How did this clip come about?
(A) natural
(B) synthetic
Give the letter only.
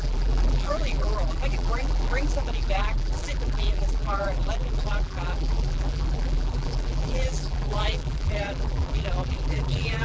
B